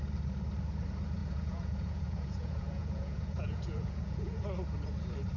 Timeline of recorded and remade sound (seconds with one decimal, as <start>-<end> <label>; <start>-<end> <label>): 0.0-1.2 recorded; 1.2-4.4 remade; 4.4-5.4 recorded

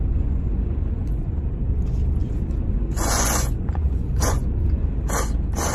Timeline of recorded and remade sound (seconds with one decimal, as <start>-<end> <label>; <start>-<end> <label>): 0.0-1.3 remade; 1.3-2.2 recorded; 2.2-4.9 remade; 4.9-5.7 recorded

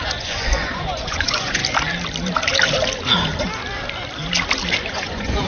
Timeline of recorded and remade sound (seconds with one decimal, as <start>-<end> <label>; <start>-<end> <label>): 0.0-1.6 remade; 1.6-4.9 recorded; 4.9-5.5 remade

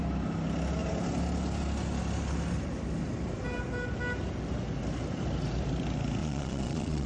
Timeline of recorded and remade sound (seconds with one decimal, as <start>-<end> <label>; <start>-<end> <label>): 0.0-6.2 recorded; 6.2-7.1 remade